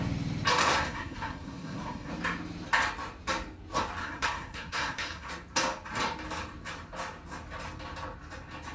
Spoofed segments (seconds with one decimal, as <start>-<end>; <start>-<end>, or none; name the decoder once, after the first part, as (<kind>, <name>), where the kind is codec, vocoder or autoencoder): 0.6-2.1 (codec, SNAC); 4.0-5.3